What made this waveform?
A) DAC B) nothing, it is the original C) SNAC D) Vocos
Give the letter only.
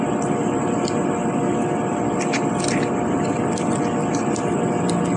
B